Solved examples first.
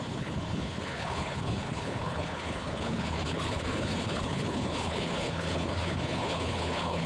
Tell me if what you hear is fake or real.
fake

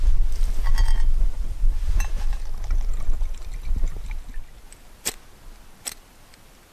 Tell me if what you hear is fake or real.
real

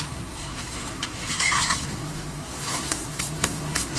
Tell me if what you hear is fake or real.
fake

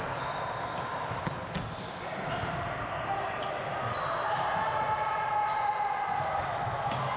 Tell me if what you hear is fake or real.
real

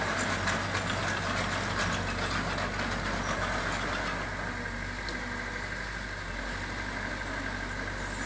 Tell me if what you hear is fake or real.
real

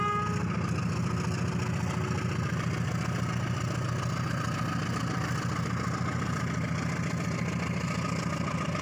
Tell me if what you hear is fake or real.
real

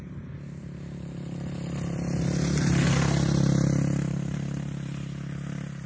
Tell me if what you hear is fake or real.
real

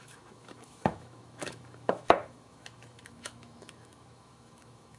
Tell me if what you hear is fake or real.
fake